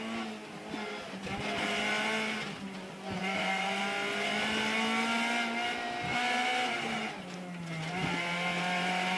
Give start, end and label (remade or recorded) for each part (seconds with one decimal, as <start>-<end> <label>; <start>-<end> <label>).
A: 0.0-3.2 recorded; 3.2-3.8 remade; 3.8-9.2 recorded